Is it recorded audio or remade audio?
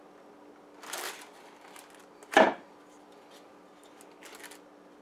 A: recorded